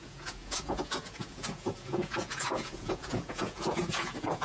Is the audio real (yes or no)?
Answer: no